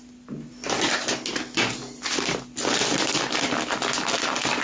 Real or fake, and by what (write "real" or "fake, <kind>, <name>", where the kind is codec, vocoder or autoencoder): real